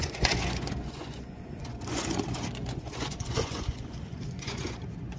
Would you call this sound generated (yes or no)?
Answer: yes